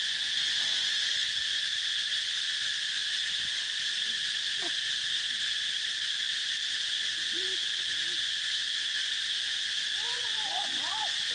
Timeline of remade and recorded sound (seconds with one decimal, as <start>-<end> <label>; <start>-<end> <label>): 0.0-1.7 remade; 1.7-6.8 recorded; 6.8-11.3 remade